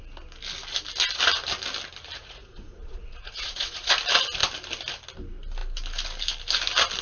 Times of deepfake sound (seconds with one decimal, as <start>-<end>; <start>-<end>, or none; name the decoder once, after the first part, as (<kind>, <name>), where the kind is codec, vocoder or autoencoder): 2.2-3.9 (vocoder, Vocos)